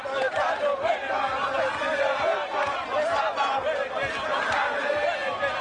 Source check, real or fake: real